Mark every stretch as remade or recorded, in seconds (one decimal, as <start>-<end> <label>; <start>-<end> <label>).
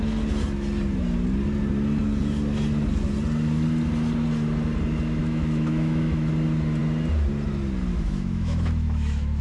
0.0-5.2 recorded; 5.2-6.3 remade; 6.3-7.9 recorded; 7.9-9.4 remade